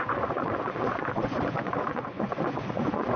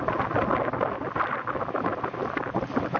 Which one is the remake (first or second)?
first